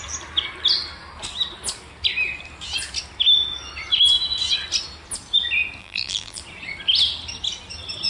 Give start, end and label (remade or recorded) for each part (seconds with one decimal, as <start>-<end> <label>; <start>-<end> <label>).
0.0-5.8 recorded; 5.8-6.4 remade; 6.4-8.1 recorded